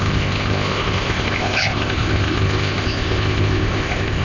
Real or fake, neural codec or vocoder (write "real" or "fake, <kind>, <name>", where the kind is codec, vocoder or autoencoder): fake, codec, ZipCodec